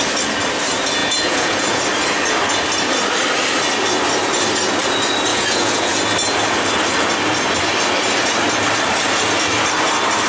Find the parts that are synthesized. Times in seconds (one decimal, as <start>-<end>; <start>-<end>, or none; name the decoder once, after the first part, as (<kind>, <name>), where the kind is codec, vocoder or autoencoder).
1.0-1.8 (vocoder, Vocos); 5.3-6.0